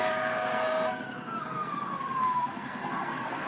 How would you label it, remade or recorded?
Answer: remade